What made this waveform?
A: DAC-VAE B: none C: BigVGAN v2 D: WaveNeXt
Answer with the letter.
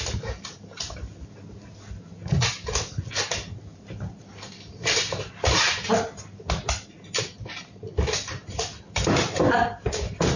B